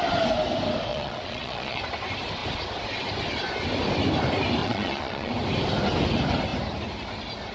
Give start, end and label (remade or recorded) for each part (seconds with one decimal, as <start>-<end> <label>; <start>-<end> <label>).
0.0-0.9 recorded; 0.9-1.8 remade; 1.8-4.6 recorded; 4.6-5.3 remade; 5.3-7.5 recorded